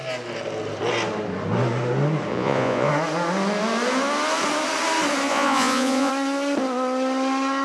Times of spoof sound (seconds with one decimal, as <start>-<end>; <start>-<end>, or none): 2.3-2.9; 5.3-6.1